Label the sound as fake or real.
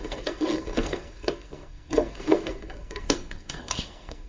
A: fake